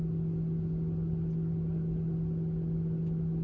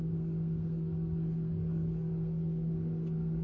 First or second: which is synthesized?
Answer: second